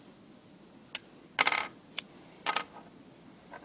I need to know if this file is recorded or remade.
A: recorded